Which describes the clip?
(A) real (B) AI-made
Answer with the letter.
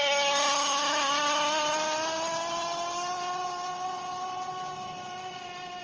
A